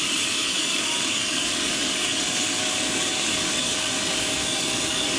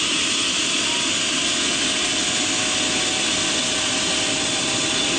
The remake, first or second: first